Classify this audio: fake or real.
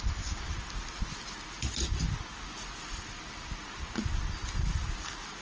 real